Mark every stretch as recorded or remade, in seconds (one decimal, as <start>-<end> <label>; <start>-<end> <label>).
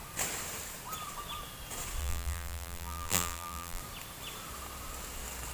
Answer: 0.0-2.0 recorded; 2.0-3.8 remade; 3.8-5.5 recorded